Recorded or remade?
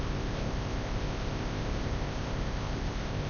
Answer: remade